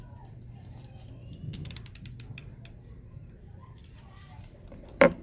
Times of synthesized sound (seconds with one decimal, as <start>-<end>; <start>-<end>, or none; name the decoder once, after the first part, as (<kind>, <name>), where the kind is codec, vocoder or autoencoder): 0.0-5.2 (vocoder, BigVGAN v2)